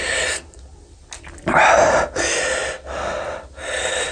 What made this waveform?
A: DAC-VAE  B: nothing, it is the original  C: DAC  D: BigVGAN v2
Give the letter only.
B